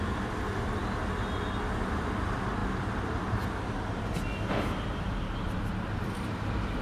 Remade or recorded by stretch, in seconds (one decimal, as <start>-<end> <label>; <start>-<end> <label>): 0.0-2.6 recorded; 2.6-3.5 remade; 3.5-6.8 recorded